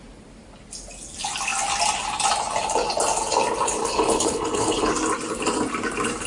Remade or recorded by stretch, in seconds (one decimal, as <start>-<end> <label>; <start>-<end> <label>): 0.0-3.8 recorded; 3.8-4.9 remade; 4.9-6.3 recorded